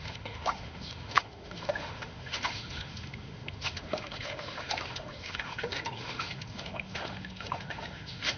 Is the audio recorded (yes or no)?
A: no